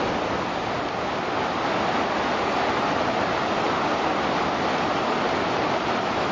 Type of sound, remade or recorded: recorded